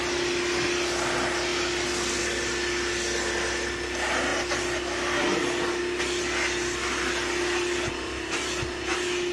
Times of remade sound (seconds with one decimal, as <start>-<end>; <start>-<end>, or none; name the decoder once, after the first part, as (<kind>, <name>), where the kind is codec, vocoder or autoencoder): none